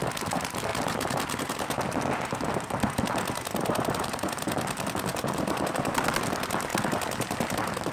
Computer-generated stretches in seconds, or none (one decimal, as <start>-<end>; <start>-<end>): none